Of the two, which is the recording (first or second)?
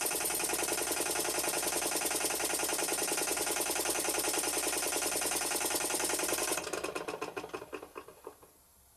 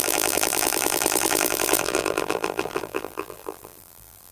first